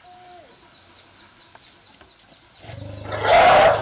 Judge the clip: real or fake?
real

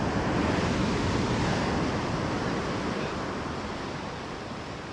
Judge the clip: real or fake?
real